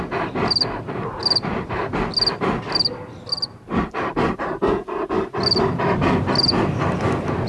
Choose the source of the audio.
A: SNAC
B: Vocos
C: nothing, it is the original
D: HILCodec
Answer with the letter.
C